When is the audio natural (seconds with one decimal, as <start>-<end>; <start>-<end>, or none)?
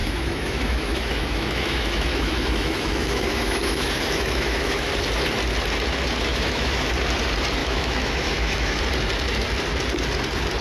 4.9-6.3; 6.9-7.6; 8.8-10.6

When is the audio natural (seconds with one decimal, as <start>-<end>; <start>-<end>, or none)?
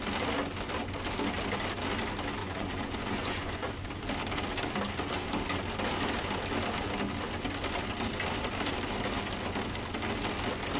0.0-2.4; 3.7-10.8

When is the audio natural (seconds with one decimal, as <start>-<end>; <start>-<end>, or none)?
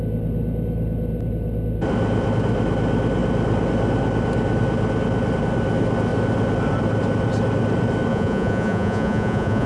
0.0-8.1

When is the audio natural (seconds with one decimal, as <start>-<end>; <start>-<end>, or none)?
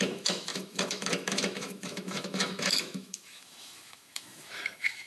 none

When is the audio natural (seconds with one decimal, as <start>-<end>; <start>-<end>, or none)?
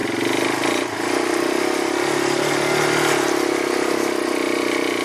0.0-5.0